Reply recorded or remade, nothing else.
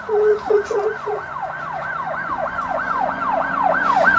remade